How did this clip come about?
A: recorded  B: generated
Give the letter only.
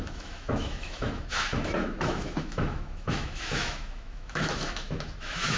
B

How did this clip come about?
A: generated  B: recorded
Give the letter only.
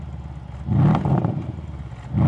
B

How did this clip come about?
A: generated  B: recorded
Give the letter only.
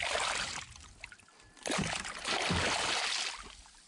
B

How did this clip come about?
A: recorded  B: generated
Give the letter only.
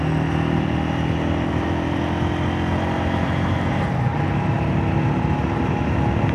A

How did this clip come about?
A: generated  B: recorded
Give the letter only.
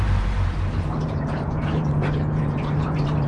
A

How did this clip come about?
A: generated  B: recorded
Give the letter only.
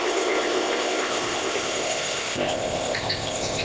A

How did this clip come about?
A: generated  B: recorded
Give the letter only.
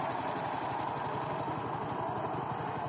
B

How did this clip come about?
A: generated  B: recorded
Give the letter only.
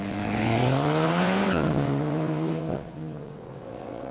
A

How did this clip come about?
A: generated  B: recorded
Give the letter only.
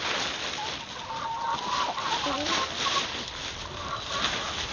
B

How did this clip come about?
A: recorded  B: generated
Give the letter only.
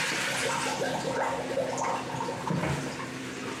A